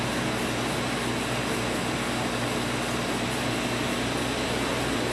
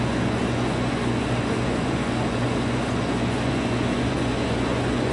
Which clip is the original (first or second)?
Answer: first